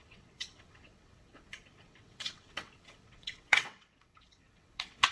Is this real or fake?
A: fake